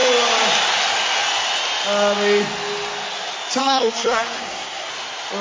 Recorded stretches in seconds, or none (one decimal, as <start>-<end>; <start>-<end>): 0.0-3.6; 4.9-5.4